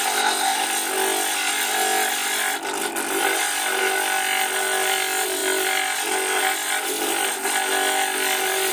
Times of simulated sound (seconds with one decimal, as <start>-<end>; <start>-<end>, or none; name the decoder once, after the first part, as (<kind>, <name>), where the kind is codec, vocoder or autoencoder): none